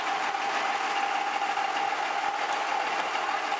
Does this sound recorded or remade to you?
recorded